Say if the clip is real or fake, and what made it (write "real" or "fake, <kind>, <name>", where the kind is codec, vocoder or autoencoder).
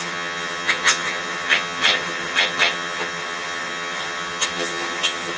fake, vocoder, HiFi-GAN